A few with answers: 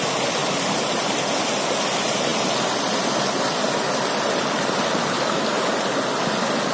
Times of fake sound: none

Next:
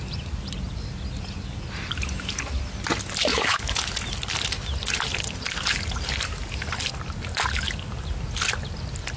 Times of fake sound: 3.3-3.8 (autoencoder, DAC-VAE)

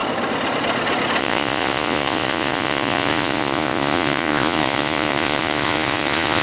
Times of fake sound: 1.2-6.4 (vocoder, Vocos)

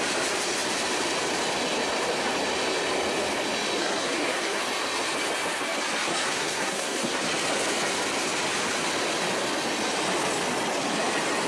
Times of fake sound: 3.8-4.6 (codec, SNAC); 6.1-7.2